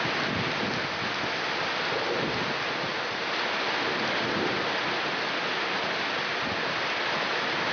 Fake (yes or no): no